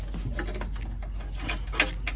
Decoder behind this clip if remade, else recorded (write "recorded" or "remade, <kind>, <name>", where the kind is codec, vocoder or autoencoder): recorded